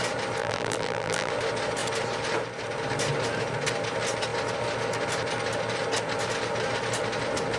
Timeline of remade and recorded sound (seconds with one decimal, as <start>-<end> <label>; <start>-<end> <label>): 0.0-0.4 recorded; 0.4-1.3 remade; 1.3-7.6 recorded